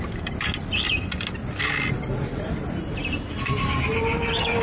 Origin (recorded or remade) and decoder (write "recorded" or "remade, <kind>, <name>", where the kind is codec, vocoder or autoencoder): recorded